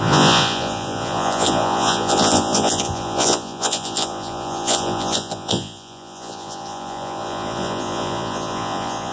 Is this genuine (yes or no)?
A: no